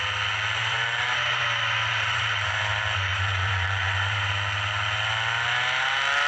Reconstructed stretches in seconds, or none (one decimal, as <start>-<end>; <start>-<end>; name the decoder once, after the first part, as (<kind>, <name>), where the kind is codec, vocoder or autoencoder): 0.6-1.4 (vocoder, BigVGAN v2); 1.9-2.6; 3.1-4.3